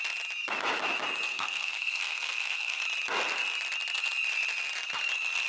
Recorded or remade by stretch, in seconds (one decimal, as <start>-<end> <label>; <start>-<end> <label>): 0.0-1.3 recorded; 1.3-2.8 remade; 2.8-5.5 recorded